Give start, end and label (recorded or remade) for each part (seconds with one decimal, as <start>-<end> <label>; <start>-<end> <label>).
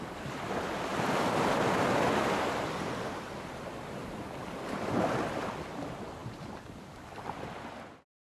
0.0-8.3 recorded